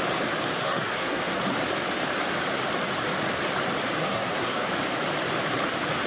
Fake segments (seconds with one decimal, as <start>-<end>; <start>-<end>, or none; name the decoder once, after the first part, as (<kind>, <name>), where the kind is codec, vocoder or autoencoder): 0.6-1.2 (codec, SNAC); 4.0-4.7